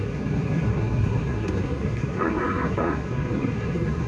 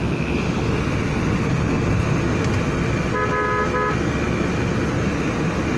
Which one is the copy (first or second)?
first